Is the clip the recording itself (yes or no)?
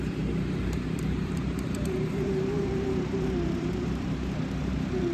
no